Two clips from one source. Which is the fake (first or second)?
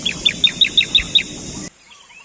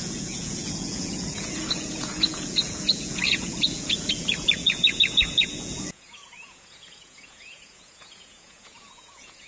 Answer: second